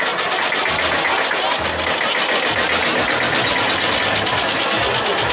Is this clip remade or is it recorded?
recorded